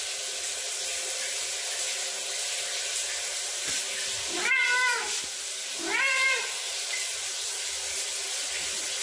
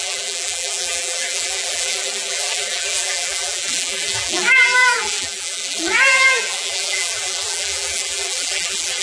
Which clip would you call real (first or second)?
first